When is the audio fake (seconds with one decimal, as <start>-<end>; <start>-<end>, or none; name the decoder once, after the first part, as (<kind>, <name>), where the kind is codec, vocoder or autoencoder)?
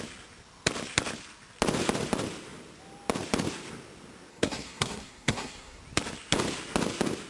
4.3-5.8 (codec, SNAC)